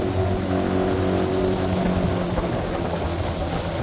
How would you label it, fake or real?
real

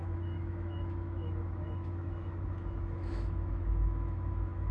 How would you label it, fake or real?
fake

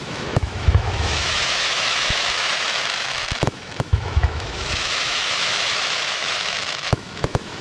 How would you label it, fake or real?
fake